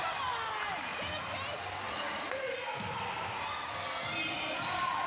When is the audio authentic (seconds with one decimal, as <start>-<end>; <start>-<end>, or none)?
0.0-5.1